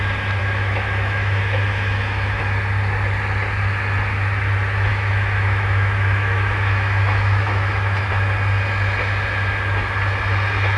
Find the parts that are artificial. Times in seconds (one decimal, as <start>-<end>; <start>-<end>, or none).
0.4-2.4; 4.9-8.1